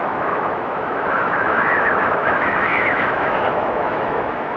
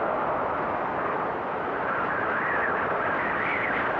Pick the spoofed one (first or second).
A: first